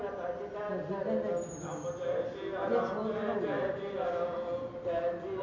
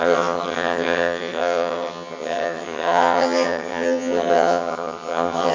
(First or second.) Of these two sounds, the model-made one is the second